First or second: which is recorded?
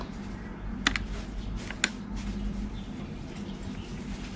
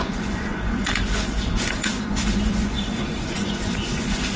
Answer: first